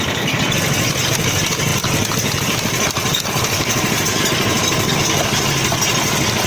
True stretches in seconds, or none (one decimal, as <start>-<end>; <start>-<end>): 0.0-1.7; 4.9-6.5